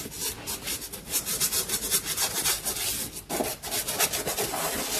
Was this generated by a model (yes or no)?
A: no